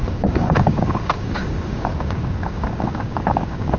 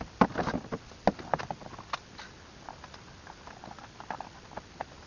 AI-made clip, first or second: first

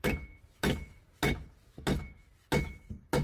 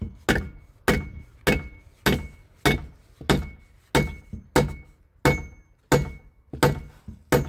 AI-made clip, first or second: first